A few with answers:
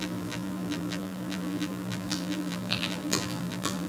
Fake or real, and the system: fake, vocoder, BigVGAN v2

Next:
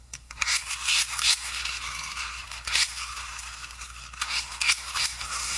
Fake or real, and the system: fake, codec, SNAC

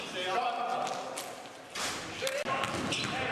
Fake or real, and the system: real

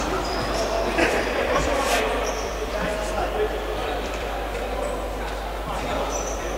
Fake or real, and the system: fake, vocoder, BigVGAN v2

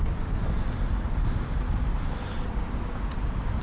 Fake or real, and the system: real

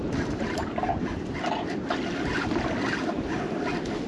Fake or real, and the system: real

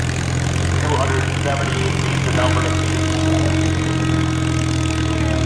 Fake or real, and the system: real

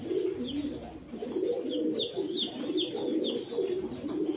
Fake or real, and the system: real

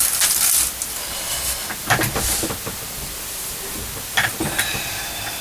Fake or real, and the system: real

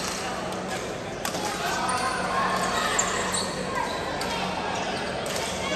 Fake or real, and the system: real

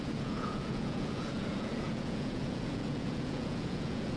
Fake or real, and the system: fake, vocoder, Vocos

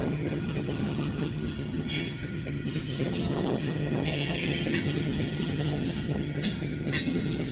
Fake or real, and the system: fake, vocoder, HiFi-GAN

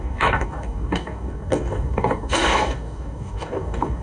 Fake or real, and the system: fake, codec, DAC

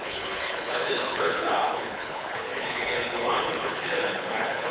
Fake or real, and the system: fake, codec, HILCodec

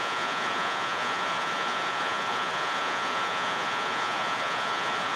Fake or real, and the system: fake, vocoder, Vocos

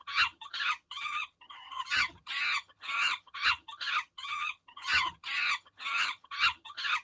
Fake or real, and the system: fake, vocoder, HiFi-GAN